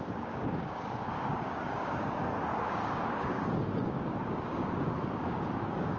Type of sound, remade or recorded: remade